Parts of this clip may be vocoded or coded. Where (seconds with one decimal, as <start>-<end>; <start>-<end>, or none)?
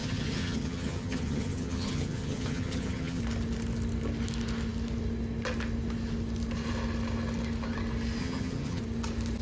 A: 0.0-3.2; 8.2-8.8